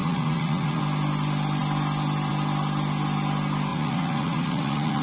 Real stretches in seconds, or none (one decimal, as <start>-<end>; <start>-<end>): 0.8-3.7